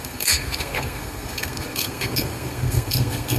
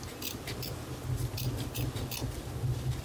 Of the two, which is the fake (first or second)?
first